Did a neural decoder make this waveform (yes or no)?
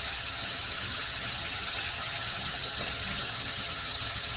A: yes